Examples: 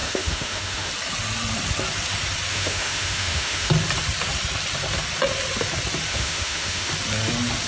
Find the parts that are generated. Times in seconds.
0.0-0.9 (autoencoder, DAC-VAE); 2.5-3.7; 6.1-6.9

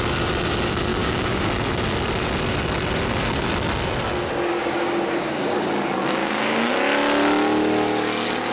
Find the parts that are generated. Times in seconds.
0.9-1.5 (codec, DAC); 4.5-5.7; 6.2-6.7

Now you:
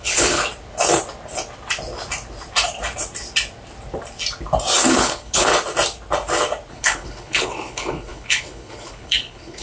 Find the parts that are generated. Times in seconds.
0.0-0.4 (codec, HILCodec); 4.9-5.5; 6.7-9.6